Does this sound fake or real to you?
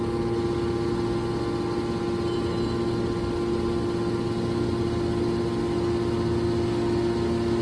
real